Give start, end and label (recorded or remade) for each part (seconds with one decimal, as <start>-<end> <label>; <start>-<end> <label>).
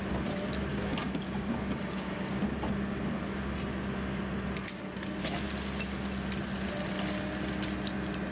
0.0-0.7 recorded; 0.7-2.4 remade; 2.4-8.3 recorded